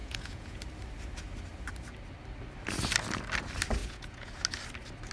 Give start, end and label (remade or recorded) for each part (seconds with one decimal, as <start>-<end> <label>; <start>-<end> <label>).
0.0-0.6 remade; 0.6-3.8 recorded; 3.8-4.3 remade; 4.3-5.1 recorded